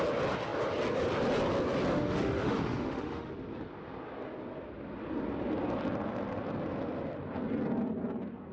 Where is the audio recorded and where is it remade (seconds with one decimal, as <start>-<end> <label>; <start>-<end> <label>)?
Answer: 0.0-1.9 recorded; 1.9-3.3 remade; 3.3-8.5 recorded